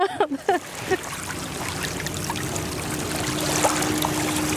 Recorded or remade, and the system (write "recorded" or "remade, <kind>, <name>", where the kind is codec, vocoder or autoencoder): recorded